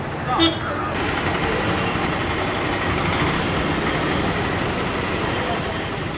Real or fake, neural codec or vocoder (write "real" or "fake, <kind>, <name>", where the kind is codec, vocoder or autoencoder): real